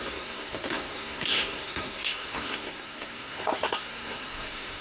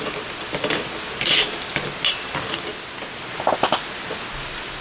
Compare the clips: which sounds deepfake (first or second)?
first